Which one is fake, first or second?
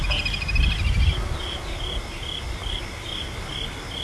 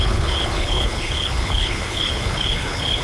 second